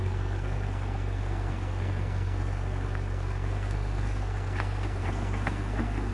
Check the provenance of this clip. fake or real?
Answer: fake